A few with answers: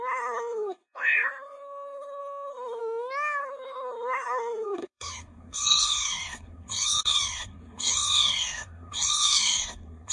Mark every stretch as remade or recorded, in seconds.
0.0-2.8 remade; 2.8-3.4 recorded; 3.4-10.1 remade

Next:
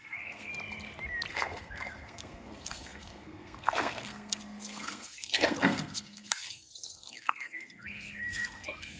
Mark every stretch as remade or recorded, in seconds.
0.0-0.5 remade; 0.5-1.3 recorded; 1.3-9.0 remade

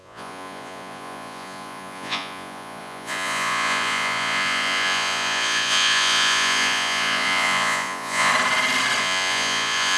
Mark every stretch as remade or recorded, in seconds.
0.0-8.3 remade; 8.3-9.0 recorded; 9.0-10.0 remade

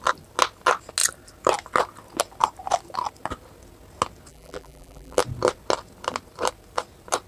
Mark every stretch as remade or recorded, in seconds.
0.0-4.3 recorded; 4.3-5.2 remade; 5.2-7.3 recorded

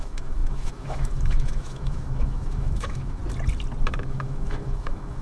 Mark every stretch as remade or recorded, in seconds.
0.0-3.2 remade; 3.2-3.9 recorded; 3.9-5.2 remade

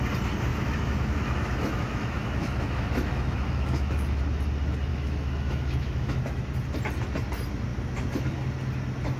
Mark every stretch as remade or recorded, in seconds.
0.0-0.5 recorded; 0.5-4.2 remade; 4.2-4.9 recorded; 4.9-6.4 remade; 6.4-9.2 recorded